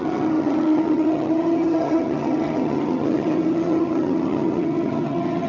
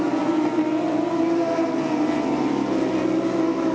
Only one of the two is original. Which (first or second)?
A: second